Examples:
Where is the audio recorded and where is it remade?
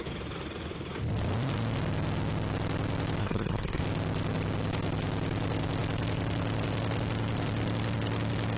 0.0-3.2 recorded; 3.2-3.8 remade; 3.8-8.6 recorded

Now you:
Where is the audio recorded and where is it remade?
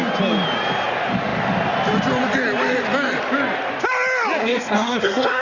0.0-4.4 recorded; 4.4-5.4 remade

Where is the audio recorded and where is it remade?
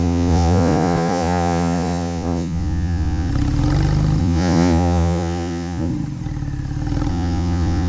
0.0-3.3 remade; 3.3-4.2 recorded; 4.2-5.9 remade; 5.9-7.1 recorded; 7.1-7.9 remade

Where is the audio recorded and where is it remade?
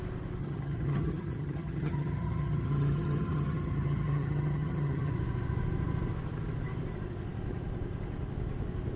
0.0-0.4 recorded; 0.4-5.1 remade; 5.1-9.0 recorded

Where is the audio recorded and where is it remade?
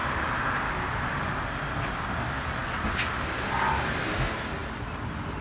0.0-5.4 recorded